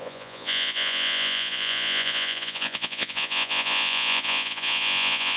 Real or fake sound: fake